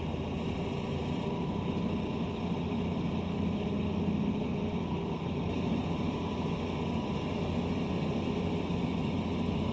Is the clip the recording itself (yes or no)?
yes